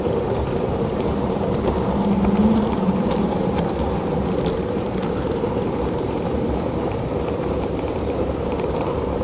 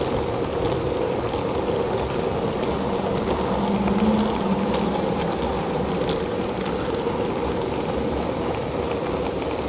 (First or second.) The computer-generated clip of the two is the first